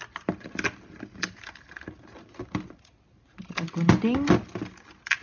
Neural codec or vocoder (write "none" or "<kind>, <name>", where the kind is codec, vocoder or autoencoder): none